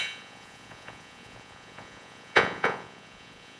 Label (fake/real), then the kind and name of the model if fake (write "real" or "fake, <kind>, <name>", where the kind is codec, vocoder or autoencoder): fake, vocoder, Vocos